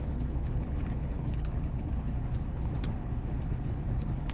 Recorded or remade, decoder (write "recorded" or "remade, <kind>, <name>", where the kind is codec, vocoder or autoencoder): remade, codec, HILCodec